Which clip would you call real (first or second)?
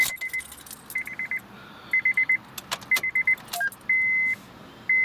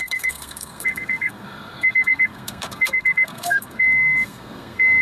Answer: first